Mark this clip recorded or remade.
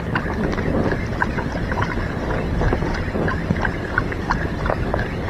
recorded